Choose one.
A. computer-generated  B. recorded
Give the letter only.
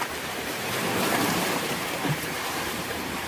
A